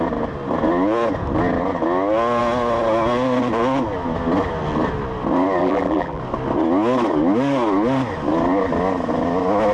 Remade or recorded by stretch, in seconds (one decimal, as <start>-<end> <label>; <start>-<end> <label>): 0.0-5.6 recorded; 5.6-6.2 remade; 6.2-9.7 recorded

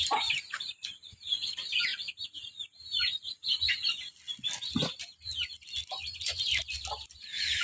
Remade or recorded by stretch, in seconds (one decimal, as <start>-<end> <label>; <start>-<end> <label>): 0.0-3.4 remade; 3.4-5.8 recorded; 5.8-7.6 remade